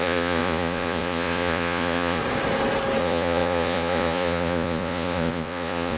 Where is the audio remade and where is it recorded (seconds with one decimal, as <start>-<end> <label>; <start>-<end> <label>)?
0.0-2.2 remade; 2.2-3.0 recorded; 3.0-6.0 remade